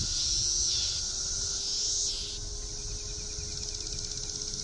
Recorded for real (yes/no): yes